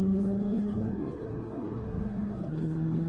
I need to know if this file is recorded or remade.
remade